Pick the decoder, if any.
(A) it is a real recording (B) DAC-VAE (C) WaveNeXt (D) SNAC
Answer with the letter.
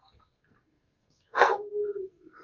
D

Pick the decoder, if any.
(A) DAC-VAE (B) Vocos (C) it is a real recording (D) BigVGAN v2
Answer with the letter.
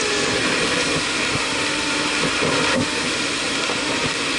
C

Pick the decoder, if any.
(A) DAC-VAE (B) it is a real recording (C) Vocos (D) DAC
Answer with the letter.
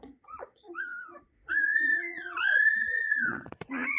C